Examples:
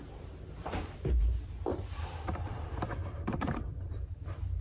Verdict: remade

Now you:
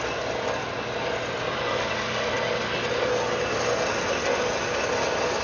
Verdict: recorded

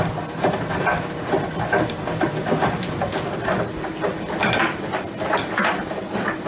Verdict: recorded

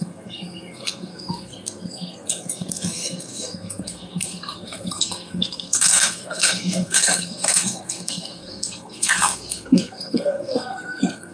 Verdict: remade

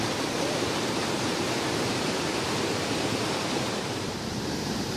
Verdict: remade